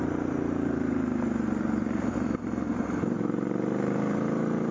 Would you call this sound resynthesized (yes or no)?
yes